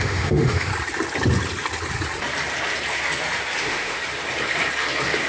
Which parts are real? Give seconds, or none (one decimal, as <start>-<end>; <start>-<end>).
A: 0.7-3.6; 4.0-5.3